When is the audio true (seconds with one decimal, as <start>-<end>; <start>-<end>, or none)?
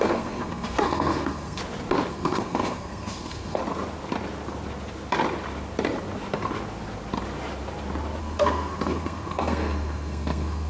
1.6-2.1; 3.6-8.2